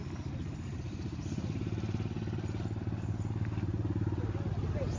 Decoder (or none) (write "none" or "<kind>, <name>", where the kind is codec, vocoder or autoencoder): none